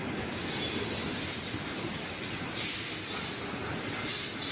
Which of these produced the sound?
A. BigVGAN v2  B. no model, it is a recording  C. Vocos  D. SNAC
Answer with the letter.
B